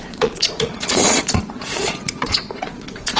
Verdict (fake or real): fake